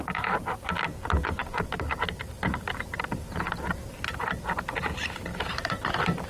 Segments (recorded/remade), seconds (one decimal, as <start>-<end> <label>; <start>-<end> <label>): 0.0-1.4 recorded; 1.4-4.0 remade; 4.0-5.3 recorded; 5.3-6.3 remade